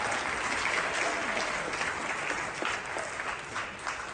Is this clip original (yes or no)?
yes